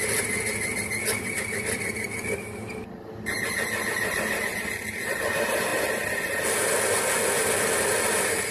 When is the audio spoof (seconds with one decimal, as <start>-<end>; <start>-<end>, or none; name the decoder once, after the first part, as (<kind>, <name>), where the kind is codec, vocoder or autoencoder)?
none